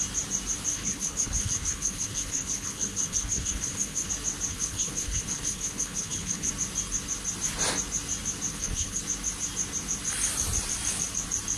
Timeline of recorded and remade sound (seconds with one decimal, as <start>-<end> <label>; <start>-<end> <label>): 0.0-0.7 recorded; 0.7-4.1 remade; 4.1-4.5 recorded; 4.5-6.5 remade; 6.5-8.5 recorded; 8.5-9.0 remade; 9.0-11.6 recorded